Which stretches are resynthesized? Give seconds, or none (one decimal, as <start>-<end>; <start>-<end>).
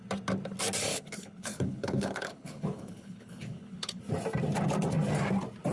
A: 0.9-4.0